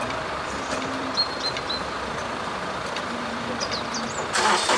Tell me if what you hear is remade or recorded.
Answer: remade